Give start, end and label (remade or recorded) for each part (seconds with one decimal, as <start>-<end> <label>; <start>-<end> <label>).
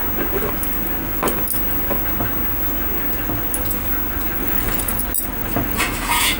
0.0-4.4 recorded; 4.4-5.0 remade; 5.0-5.4 recorded; 5.4-6.4 remade